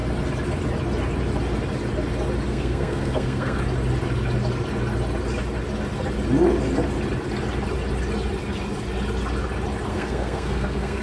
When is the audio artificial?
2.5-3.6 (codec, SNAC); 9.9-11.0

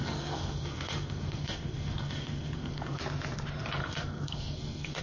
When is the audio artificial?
0.0-3.0 (codec, SNAC); 3.8-5.0

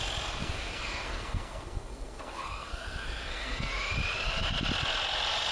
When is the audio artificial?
0.4-3.7 (codec, SNAC)

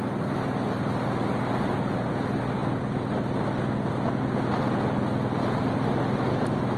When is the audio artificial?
none

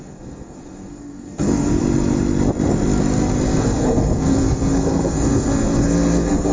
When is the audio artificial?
0.0-1.8 (codec, SNAC); 3.6-6.5

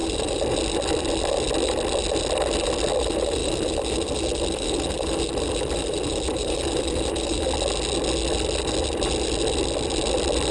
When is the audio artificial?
none